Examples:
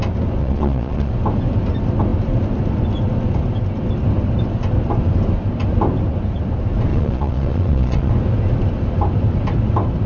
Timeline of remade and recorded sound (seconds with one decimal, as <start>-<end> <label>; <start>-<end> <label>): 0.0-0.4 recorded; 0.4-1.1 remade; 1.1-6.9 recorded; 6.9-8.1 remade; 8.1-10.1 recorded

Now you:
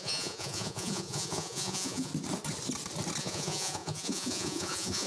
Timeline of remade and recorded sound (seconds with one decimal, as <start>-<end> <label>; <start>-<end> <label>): 0.0-2.1 remade; 2.1-3.2 recorded; 3.2-5.1 remade

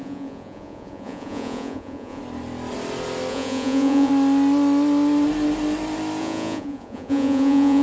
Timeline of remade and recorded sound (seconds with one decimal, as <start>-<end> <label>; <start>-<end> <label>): 0.0-2.2 remade; 2.2-3.3 recorded; 3.3-4.1 remade; 4.1-6.2 recorded; 6.2-7.8 remade